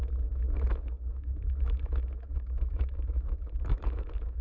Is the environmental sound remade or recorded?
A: remade